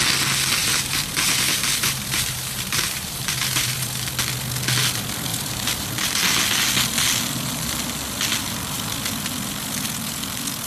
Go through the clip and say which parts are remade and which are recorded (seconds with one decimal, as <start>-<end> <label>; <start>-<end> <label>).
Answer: 0.0-0.6 recorded; 0.6-4.1 remade; 4.1-5.3 recorded; 5.3-5.9 remade; 5.9-10.7 recorded